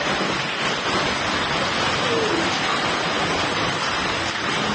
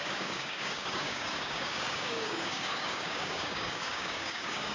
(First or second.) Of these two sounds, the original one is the first